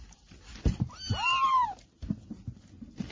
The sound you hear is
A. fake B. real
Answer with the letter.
B